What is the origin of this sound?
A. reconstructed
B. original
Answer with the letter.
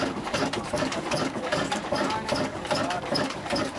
A